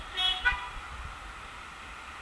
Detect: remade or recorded recorded